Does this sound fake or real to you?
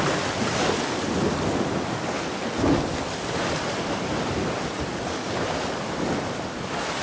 real